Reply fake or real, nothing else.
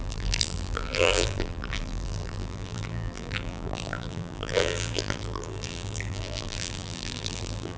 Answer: fake